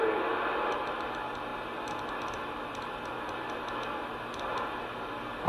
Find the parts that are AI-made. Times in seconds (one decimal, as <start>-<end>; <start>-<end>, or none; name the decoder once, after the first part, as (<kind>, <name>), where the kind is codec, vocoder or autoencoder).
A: none

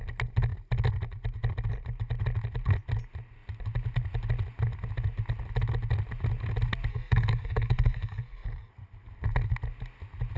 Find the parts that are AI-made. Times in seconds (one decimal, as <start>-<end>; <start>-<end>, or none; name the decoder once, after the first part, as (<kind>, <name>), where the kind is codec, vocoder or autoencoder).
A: 6.9-8.7 (codec, SNAC)